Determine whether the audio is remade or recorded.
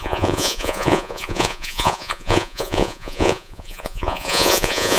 remade